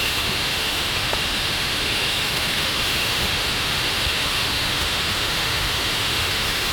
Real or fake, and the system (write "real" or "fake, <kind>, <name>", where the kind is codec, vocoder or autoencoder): fake, autoencoder, DAC-VAE